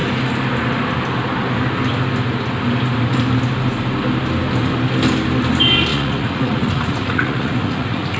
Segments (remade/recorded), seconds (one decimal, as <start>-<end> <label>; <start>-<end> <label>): 0.0-5.9 recorded; 5.9-8.2 remade